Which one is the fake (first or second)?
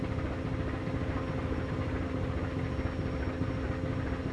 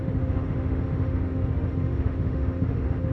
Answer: second